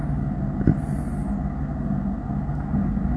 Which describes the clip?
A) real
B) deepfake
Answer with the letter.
A